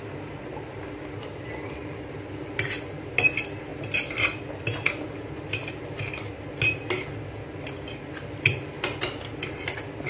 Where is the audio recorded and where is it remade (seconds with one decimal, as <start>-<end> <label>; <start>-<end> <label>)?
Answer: 0.0-10.1 recorded